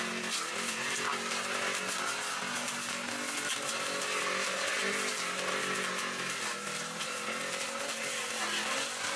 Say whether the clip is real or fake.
real